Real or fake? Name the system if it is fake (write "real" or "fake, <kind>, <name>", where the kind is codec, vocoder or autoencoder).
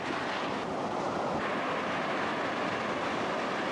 real